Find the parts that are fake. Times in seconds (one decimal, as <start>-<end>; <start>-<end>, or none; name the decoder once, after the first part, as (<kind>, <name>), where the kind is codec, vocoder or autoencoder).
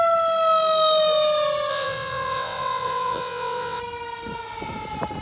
1.7-3.8 (vocoder, WaveNeXt)